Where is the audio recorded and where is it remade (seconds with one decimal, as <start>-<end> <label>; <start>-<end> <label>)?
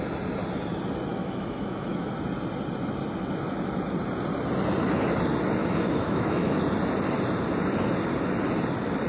0.0-1.1 recorded; 1.1-2.1 remade; 2.1-5.6 recorded; 5.6-6.6 remade; 6.6-9.1 recorded